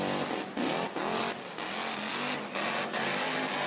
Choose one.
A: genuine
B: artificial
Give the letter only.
A